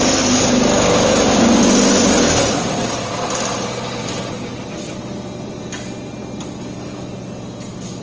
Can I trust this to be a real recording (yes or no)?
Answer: yes